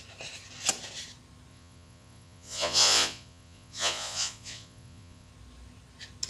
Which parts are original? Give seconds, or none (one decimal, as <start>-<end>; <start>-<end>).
0.0-1.5; 5.3-6.3